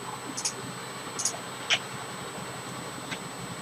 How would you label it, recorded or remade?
recorded